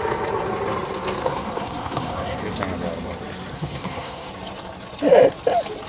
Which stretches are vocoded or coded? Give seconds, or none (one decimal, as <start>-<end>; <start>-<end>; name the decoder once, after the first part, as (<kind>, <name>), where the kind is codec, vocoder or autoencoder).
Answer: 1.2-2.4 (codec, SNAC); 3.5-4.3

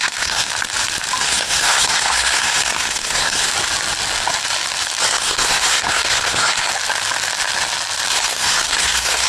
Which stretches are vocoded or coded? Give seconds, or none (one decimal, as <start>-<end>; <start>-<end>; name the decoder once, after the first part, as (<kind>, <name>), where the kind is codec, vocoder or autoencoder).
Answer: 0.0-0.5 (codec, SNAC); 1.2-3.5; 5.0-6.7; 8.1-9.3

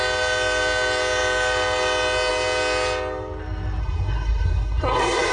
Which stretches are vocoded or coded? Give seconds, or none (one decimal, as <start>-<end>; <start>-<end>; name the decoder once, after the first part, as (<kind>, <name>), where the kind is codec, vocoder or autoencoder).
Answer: 3.8-5.3 (codec, SNAC)

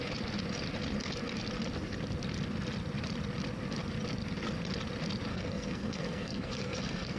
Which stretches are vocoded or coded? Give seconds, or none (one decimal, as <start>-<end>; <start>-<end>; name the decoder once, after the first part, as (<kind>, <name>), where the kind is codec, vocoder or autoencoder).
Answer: 5.3-7.2 (codec, SNAC)

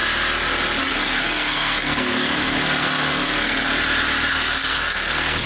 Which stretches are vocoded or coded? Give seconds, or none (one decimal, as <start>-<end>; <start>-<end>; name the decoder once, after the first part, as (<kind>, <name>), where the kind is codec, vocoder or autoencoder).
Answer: 0.8-3.7 (codec, SNAC); 4.3-5.5

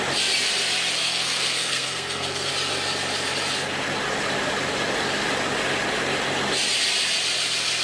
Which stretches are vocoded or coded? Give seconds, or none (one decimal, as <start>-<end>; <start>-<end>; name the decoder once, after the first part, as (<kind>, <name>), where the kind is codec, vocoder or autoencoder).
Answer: 1.0-2.5 (codec, SNAC)